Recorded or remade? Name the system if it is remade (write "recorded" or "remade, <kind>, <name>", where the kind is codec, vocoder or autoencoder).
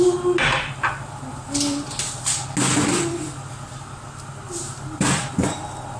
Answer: recorded